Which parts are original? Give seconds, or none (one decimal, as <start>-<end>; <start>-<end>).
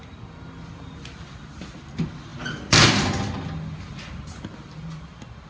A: 0.0-5.5